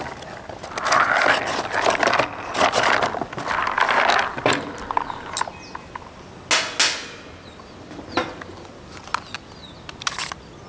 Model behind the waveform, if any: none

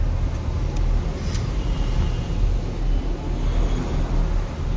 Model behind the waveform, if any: none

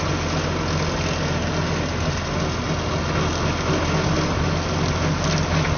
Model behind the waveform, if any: none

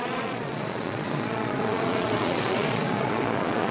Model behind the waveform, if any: vocoder, Vocos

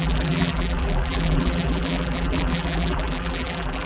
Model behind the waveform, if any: vocoder, BigVGAN v2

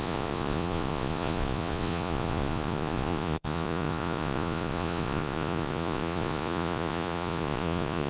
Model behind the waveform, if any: vocoder, Vocos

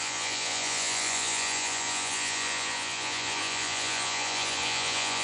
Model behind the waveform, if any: vocoder, Vocos